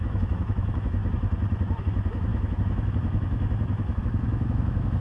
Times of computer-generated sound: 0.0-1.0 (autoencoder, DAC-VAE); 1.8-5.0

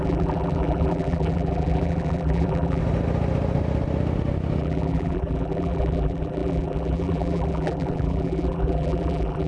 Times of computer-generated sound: 0.0-2.8 (vocoder, BigVGAN v2); 4.6-9.5

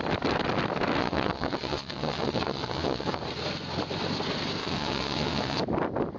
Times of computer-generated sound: 1.0-3.2 (vocoder, WaveNeXt); 4.6-5.6

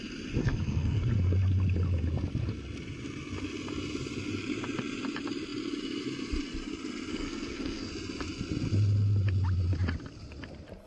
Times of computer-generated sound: 0.4-1.0 (codec, SNAC); 7.1-7.9

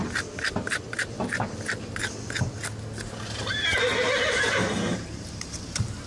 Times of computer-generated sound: 3.1-3.9 (vocoder, BigVGAN v2); 4.5-6.1